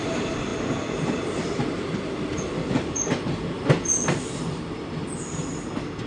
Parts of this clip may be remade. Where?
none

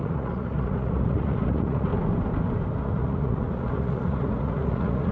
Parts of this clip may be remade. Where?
0.0-1.9 (vocoder, Vocos); 2.8-5.1

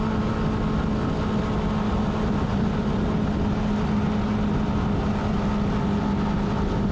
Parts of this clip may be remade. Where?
2.5-3.1 (vocoder, BigVGAN v2)

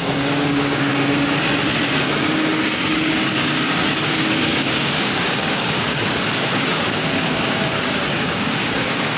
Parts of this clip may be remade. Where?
0.0-0.9 (codec, DAC); 2.6-9.2

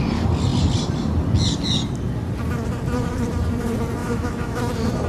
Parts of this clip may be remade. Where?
4.0-4.6 (autoencoder, DAC-VAE)

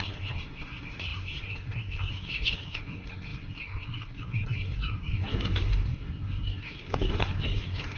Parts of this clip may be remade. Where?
0.0-8.0 (codec, SNAC)